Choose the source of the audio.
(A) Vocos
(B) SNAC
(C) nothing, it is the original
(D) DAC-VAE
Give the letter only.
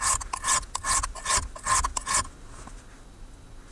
C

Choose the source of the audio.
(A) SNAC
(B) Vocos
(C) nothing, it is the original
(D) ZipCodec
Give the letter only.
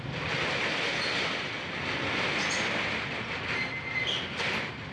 C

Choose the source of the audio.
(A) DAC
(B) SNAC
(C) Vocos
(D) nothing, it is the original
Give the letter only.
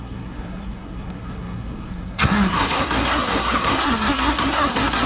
B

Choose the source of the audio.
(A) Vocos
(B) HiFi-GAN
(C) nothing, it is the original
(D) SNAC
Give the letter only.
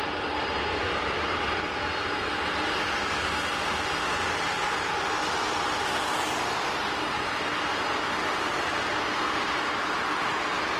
C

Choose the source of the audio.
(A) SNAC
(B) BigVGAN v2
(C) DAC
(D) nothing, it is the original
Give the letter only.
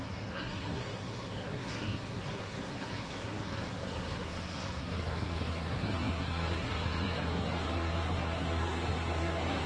A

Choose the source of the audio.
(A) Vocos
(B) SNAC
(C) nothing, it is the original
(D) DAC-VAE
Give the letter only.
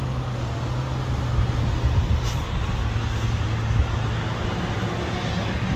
C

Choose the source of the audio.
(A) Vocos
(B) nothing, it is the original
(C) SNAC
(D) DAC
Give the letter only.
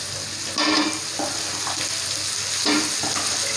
B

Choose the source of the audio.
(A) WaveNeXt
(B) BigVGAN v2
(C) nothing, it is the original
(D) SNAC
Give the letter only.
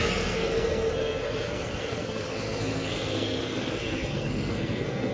D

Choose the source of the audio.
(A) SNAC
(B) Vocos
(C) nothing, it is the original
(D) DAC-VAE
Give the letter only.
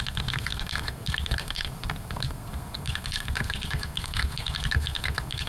A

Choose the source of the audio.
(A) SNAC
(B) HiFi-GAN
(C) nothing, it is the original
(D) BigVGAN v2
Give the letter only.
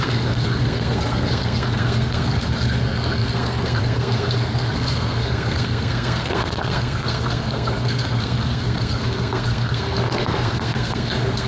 A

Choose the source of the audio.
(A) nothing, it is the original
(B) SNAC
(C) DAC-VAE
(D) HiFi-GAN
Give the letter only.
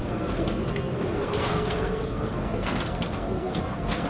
B